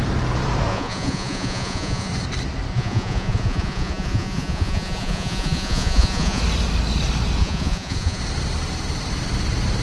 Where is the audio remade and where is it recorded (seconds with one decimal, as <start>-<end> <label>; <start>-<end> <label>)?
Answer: 0.0-0.7 recorded; 0.7-2.1 remade; 2.1-2.7 recorded; 2.7-6.4 remade; 6.4-7.4 recorded; 7.4-8.2 remade; 8.2-9.8 recorded